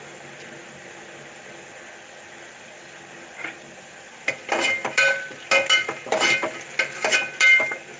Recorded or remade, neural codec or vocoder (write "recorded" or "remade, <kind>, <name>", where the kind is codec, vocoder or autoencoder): recorded